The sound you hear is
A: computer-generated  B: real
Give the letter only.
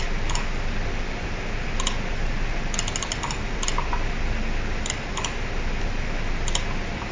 B